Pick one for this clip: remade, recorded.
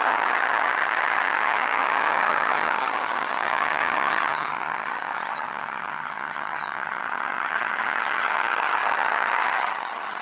remade